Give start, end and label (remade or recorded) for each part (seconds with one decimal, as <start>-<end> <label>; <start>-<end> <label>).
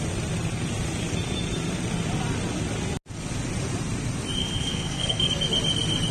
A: 0.0-4.4 recorded; 4.4-5.3 remade; 5.3-6.1 recorded